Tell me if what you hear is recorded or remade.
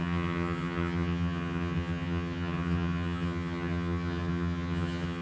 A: remade